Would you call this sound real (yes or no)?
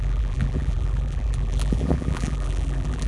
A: no